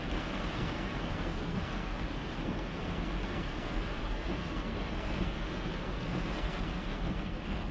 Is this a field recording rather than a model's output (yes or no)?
no